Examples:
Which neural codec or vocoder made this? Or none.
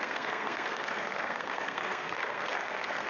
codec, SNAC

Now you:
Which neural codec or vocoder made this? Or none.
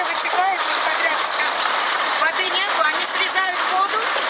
vocoder, BigVGAN v2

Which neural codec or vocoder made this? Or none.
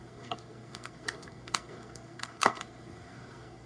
codec, SNAC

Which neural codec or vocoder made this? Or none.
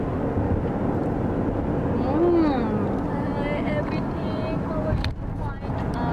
none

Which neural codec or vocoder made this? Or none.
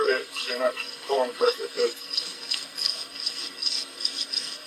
codec, SNAC